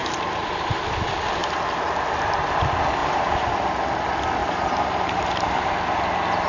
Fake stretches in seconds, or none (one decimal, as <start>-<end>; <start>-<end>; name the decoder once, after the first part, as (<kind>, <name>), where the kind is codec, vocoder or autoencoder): 0.0-0.9 (vocoder, BigVGAN v2); 3.0-3.5; 4.4-5.7